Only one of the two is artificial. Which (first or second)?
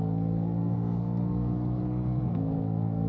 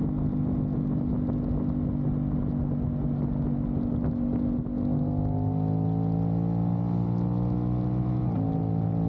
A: first